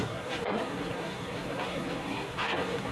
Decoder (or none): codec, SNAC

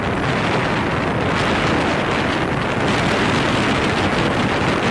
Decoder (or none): none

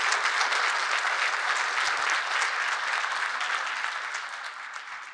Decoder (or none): none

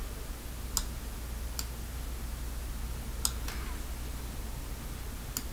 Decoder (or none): none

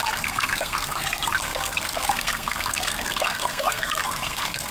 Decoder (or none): codec, SNAC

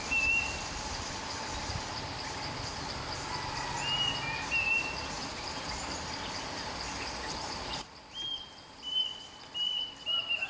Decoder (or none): none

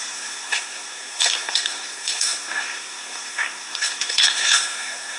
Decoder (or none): codec, SNAC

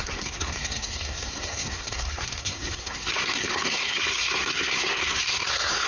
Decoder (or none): codec, SNAC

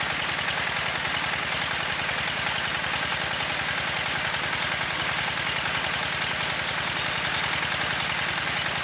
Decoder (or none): none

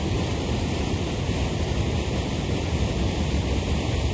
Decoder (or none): none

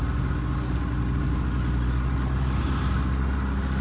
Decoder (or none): none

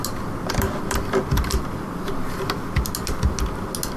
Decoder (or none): none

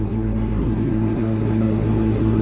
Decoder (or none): codec, SNAC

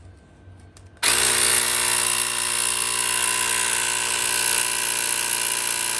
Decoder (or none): none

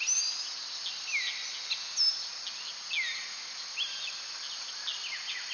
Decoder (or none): none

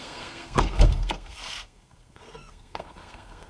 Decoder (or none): codec, SNAC